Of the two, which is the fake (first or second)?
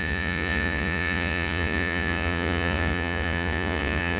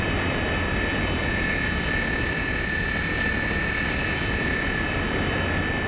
first